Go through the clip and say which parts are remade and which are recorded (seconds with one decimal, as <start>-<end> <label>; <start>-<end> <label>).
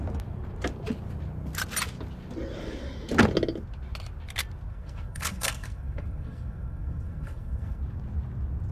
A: 0.0-4.7 recorded; 4.7-7.8 remade; 7.8-8.7 recorded